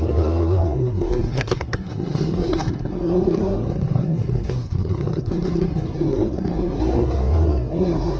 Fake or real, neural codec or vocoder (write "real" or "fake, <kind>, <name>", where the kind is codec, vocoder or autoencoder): fake, codec, SNAC